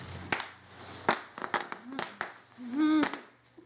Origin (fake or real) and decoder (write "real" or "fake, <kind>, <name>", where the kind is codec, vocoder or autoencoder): real